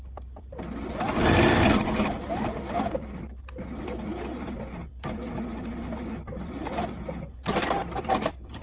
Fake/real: fake